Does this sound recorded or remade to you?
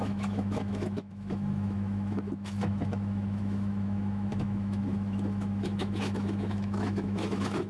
remade